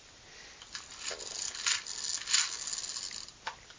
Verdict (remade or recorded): recorded